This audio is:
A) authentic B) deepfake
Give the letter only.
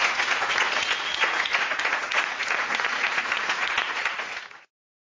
B